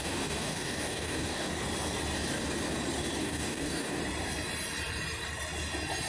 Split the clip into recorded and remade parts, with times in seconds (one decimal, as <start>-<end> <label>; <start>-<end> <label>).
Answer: 0.0-1.5 remade; 1.5-3.2 recorded; 3.2-4.0 remade; 4.0-6.1 recorded